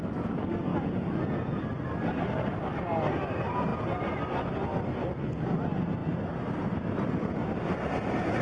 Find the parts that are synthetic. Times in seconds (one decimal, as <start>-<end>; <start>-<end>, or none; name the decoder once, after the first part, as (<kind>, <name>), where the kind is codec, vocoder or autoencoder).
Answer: 0.7-1.6 (vocoder, Vocos)